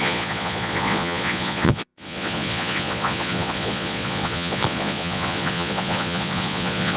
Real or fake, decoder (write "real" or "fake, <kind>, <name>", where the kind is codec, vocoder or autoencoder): fake, vocoder, Vocos